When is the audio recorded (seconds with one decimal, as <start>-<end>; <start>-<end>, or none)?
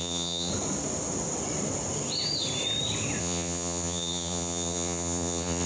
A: 0.5-3.2